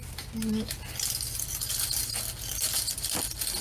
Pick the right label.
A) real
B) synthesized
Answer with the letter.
A